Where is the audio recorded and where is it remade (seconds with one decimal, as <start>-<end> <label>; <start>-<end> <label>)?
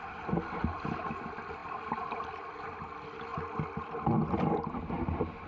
0.0-5.5 recorded